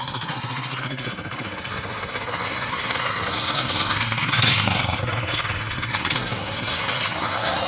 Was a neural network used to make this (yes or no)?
yes